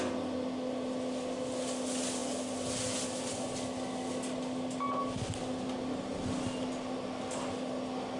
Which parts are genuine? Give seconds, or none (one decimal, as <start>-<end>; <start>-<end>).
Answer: 0.0-8.2